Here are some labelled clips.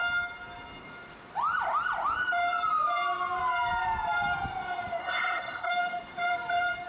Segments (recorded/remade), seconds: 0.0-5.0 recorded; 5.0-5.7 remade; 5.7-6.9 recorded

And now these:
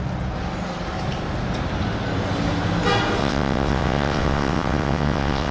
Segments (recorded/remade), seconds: 0.0-3.2 recorded; 3.2-5.5 remade